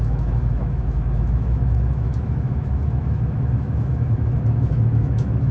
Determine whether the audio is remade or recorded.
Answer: remade